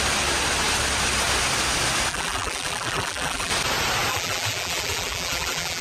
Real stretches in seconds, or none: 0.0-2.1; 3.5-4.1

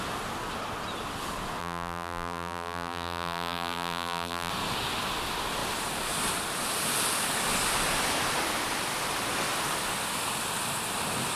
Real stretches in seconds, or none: 0.0-1.6; 4.5-11.4

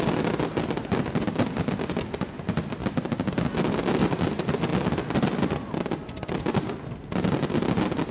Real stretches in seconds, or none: 0.0-8.1

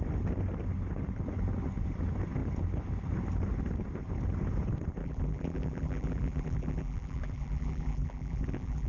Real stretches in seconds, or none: 0.0-5.0

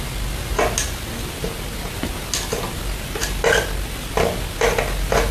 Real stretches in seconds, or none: 0.0-5.3